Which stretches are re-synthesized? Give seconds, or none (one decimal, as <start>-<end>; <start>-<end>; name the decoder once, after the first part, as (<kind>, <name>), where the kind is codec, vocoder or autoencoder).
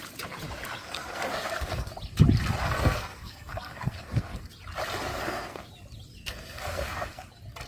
0.8-1.9 (codec, SNAC); 2.6-4.5; 5.1-5.7; 6.2-7.3